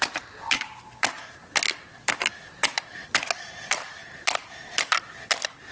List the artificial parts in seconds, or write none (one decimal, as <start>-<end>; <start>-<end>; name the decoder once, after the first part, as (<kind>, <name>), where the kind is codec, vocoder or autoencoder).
none